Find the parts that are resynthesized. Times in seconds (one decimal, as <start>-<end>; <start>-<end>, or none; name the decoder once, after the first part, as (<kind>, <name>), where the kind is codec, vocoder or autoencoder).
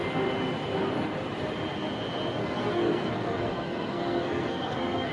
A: 2.4-5.1 (codec, SNAC)